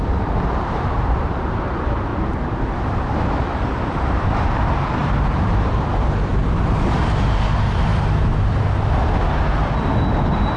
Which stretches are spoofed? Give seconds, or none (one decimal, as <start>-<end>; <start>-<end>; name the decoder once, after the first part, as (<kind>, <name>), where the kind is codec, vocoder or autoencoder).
0.0-2.1 (vocoder, BigVGAN v2); 2.7-7.9; 10.1-10.6